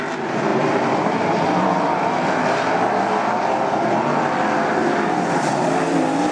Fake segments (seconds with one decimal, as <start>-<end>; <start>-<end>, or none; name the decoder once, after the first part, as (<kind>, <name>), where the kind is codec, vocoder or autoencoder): 0.5-4.3 (vocoder, BigVGAN v2); 4.8-5.5